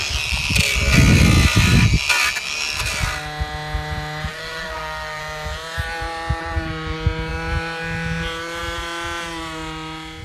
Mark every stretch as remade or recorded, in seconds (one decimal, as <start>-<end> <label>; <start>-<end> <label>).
0.0-4.3 recorded; 4.3-5.2 remade; 5.2-10.2 recorded